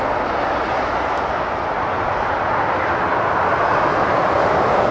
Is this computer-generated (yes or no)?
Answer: no